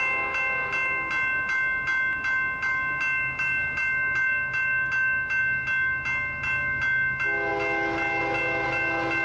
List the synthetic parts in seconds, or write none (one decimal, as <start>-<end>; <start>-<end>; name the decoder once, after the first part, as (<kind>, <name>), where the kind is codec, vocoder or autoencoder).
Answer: none